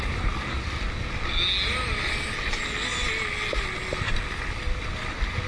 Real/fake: real